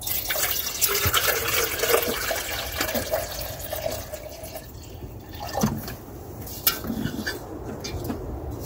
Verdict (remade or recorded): recorded